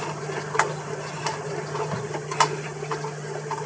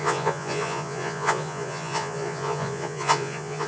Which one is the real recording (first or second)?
first